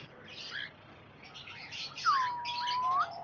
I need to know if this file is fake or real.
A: real